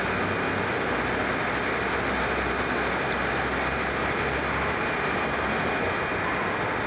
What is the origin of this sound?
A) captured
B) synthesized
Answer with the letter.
A